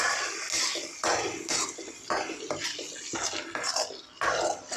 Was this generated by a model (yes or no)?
no